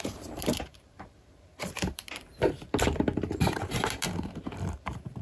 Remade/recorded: remade